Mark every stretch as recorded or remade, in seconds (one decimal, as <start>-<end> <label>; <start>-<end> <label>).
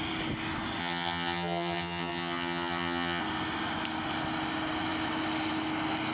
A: 0.0-0.8 recorded; 0.8-3.2 remade; 3.2-6.1 recorded